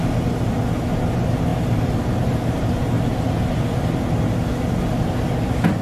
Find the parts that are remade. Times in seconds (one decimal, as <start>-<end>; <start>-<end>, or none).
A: 1.5-4.1